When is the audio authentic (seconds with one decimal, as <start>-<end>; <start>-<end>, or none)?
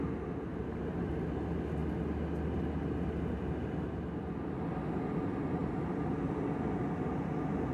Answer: 0.0-0.5; 1.1-5.6; 6.1-7.7